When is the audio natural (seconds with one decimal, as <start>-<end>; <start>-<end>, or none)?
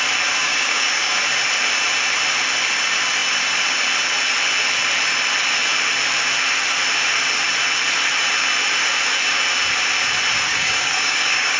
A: 0.0-0.4; 1.2-10.5